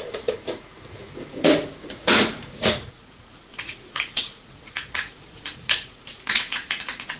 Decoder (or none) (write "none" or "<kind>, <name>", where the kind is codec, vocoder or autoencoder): vocoder, Vocos